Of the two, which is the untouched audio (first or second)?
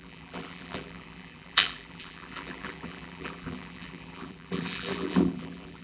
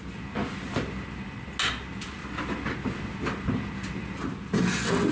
second